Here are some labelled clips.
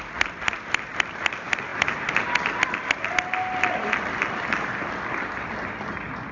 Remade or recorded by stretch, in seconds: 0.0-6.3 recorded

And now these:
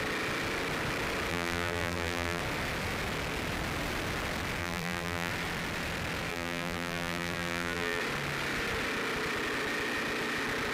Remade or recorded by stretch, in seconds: 0.0-1.3 recorded; 1.3-2.4 remade; 2.4-4.6 recorded; 4.6-5.3 remade; 5.3-6.3 recorded; 6.3-8.0 remade; 8.0-10.7 recorded

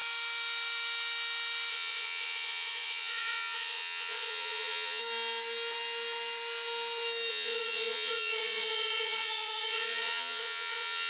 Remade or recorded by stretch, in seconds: 0.0-1.7 recorded; 1.7-5.0 remade; 5.0-7.3 recorded; 7.3-11.1 remade

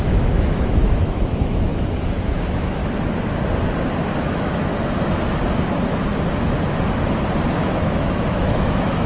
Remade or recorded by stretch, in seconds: 0.0-2.8 remade; 2.8-4.2 recorded; 4.2-4.7 remade; 4.7-7.6 recorded; 7.6-9.1 remade

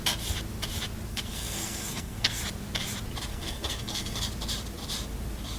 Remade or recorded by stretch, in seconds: 0.0-1.1 recorded; 1.1-2.4 remade; 2.4-3.3 recorded; 3.3-4.3 remade; 4.3-5.6 recorded

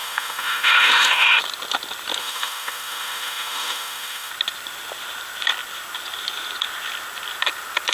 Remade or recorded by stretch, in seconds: 0.0-1.4 remade; 1.4-2.2 recorded; 2.2-4.3 remade; 4.3-7.9 recorded

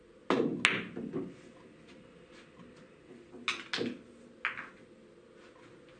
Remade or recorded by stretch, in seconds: 0.0-6.0 recorded

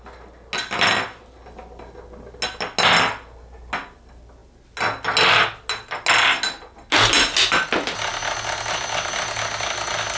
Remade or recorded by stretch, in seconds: 0.0-10.2 recorded